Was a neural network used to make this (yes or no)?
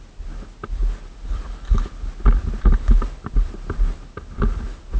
no